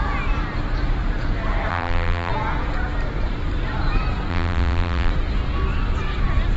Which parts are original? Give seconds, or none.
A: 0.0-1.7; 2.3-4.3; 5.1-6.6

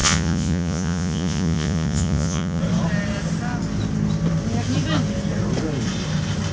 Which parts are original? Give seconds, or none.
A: 2.6-6.5

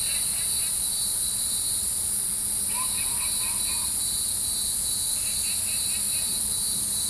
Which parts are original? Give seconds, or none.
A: 0.0-7.1

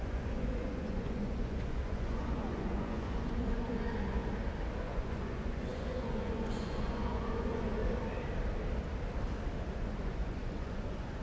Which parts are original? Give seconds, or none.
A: 4.2-4.8; 7.8-9.8

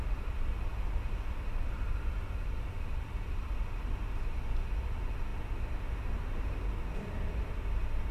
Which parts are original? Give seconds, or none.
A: 0.0-8.1

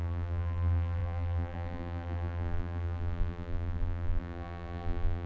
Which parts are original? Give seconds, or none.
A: none

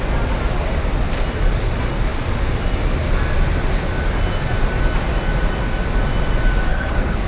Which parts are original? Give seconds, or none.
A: 0.0-6.7